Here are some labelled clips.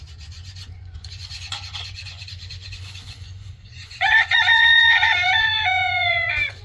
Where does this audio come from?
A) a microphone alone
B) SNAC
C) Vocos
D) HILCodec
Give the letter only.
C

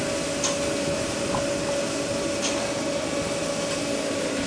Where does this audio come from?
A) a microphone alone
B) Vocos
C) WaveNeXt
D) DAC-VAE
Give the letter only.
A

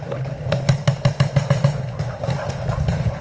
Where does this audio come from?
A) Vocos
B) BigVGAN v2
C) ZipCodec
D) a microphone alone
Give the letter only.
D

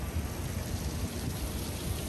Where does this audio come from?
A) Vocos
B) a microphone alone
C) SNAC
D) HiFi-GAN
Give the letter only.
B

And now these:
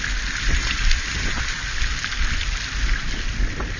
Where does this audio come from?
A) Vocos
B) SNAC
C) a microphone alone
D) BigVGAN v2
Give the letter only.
C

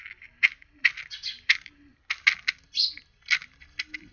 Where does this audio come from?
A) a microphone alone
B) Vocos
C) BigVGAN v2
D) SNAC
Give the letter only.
A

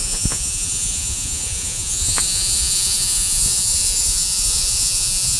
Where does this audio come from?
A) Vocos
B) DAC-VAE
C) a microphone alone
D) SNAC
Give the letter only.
A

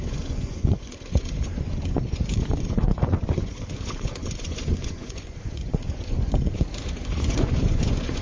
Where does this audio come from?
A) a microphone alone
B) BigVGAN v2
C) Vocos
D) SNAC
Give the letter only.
C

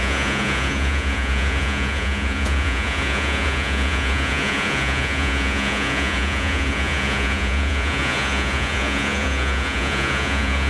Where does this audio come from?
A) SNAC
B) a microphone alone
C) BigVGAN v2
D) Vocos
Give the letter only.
D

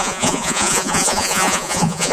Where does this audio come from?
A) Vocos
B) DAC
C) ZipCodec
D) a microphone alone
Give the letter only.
A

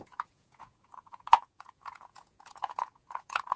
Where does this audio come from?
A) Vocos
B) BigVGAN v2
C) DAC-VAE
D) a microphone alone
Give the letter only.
A